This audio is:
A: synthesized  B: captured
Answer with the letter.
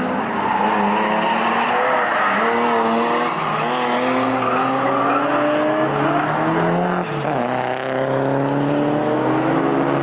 B